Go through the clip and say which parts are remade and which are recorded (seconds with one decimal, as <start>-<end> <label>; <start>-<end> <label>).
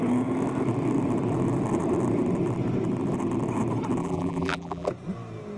0.0-4.0 recorded; 4.0-4.9 remade; 4.9-5.6 recorded